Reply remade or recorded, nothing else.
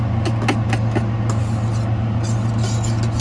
recorded